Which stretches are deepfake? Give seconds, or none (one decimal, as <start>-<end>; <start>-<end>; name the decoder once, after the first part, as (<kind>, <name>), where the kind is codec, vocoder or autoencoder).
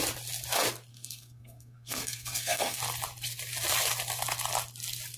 0.9-2.8 (codec, SNAC)